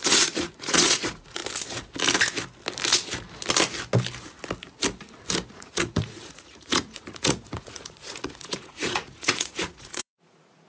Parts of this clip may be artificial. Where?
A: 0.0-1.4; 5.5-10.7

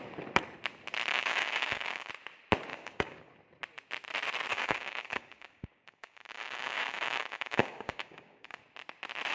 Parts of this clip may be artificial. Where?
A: 1.1-2.1; 2.7-3.3; 4.5-8.6